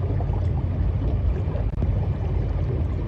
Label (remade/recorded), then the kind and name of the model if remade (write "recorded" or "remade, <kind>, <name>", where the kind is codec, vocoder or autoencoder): recorded